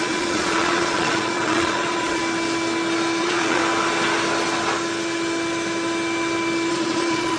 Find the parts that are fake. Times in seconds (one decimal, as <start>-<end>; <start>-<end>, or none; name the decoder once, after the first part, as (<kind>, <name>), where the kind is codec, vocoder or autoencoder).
0.0-2.2 (vocoder, Vocos); 3.2-3.6; 6.7-7.4